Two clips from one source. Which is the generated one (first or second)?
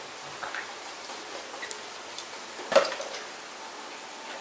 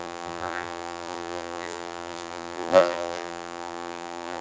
second